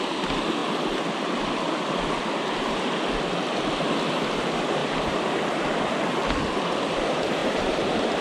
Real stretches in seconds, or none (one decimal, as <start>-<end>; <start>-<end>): 0.0-4.8; 5.4-7.4